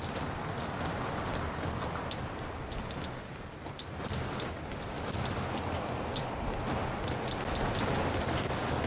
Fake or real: real